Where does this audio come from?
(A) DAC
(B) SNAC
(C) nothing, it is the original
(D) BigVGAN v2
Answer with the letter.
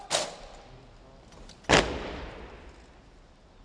C